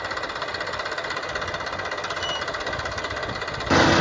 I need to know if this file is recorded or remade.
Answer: recorded